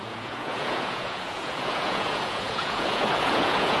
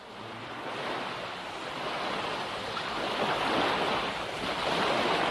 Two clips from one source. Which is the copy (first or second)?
first